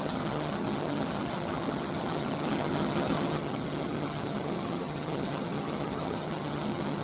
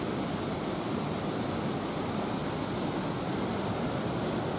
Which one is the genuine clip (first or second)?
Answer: second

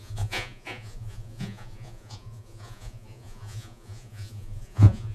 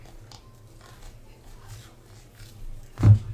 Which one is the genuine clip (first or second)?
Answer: second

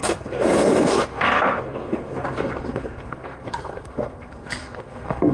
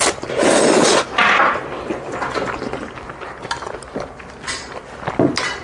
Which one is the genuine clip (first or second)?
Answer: second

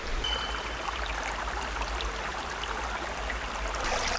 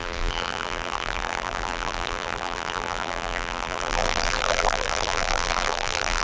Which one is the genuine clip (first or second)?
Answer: first